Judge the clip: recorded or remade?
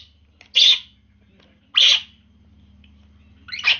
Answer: recorded